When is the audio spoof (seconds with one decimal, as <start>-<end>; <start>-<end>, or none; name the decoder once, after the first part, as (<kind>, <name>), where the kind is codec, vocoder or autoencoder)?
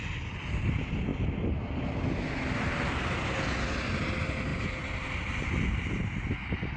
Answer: none